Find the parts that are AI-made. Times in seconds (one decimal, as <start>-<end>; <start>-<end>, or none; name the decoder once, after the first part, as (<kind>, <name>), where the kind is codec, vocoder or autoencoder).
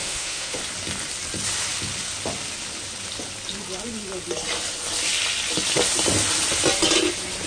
0.0-0.6 (autoencoder, DAC-VAE)